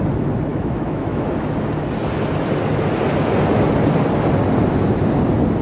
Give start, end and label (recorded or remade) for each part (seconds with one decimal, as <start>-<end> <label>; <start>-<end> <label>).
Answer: 0.0-0.5 recorded; 0.5-1.2 remade; 1.2-5.6 recorded